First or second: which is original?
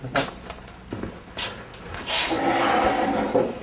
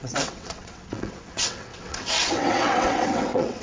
first